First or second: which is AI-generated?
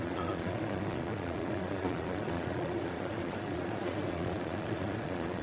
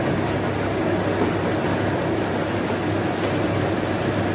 first